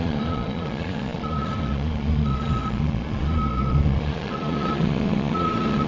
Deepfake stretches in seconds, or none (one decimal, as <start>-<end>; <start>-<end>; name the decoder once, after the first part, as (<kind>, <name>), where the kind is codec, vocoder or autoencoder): 0.0-5.9 (vocoder, Vocos)